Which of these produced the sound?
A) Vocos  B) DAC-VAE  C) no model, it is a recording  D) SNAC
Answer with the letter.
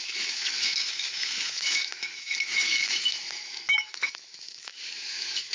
B